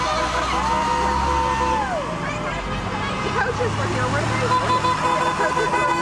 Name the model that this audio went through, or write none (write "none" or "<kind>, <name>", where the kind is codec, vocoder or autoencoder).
none